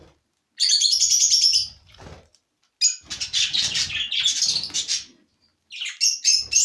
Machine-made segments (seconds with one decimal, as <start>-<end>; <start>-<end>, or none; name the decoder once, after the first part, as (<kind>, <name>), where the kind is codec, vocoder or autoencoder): 0.7-1.3 (vocoder, Vocos)